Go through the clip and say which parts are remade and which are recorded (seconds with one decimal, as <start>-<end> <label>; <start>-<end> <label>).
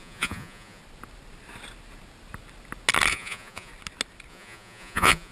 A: 0.0-0.8 remade; 0.8-3.1 recorded; 3.1-3.7 remade; 3.7-4.3 recorded; 4.3-5.3 remade